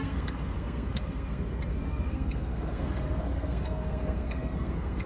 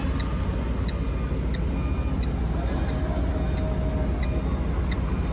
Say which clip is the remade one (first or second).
first